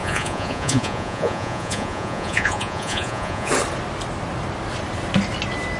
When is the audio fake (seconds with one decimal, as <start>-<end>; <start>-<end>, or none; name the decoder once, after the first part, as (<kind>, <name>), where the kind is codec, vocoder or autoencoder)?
0.0-3.5 (vocoder, Vocos)